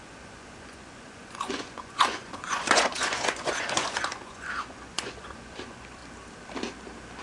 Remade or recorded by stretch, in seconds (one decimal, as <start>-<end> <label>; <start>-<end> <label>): 0.0-6.0 remade; 6.0-7.2 recorded